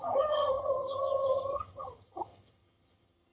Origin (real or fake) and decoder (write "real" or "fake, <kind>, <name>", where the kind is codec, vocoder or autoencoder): fake, vocoder, HiFi-GAN